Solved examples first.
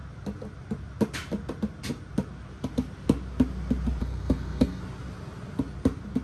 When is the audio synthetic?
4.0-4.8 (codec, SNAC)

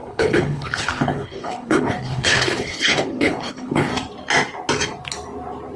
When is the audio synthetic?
0.0-3.9 (codec, HILCodec)

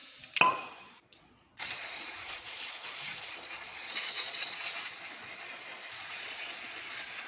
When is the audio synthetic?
0.5-7.3 (vocoder, Vocos)

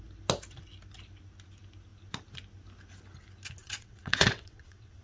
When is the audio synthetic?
3.6-5.0 (vocoder, WaveNeXt)

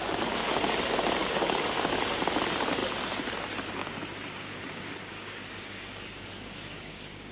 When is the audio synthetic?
1.2-2.0 (codec, DAC); 3.8-7.3

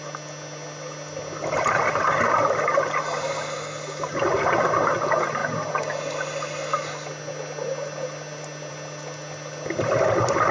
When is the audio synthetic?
none

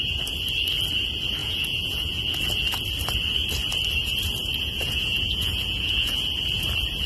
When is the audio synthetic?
1.4-2.4 (vocoder, Vocos); 4.5-6.2

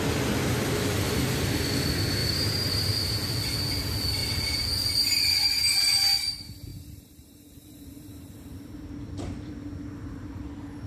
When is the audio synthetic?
2.2-2.8 (vocoder, BigVGAN v2); 6.7-10.9